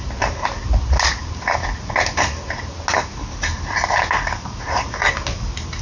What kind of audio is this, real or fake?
real